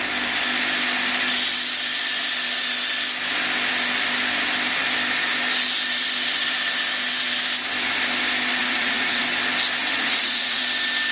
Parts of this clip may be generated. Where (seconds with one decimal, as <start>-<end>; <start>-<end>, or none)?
8.6-9.2; 9.8-10.6